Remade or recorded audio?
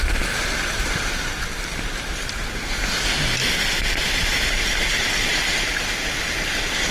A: recorded